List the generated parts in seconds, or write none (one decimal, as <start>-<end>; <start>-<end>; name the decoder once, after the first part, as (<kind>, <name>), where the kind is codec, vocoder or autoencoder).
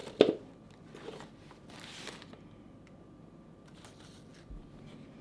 none